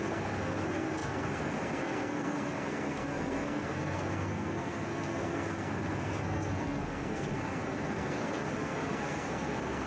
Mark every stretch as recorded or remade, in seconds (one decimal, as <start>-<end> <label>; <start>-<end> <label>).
0.0-9.9 remade